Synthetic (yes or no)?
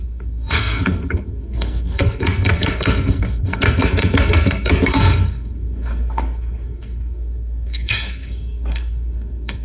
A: yes